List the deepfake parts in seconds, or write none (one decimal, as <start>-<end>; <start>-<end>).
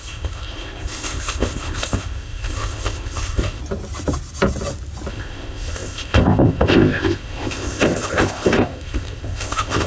0.0-3.6; 5.1-9.9